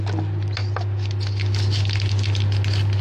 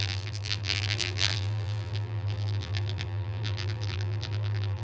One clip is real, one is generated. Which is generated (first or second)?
second